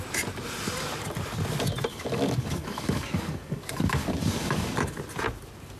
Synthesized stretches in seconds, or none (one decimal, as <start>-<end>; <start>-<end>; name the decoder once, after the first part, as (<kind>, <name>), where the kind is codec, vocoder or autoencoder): 1.9-5.0 (codec, DAC)